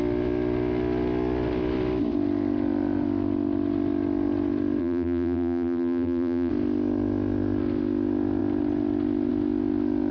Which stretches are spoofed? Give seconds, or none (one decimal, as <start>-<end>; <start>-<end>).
4.8-6.5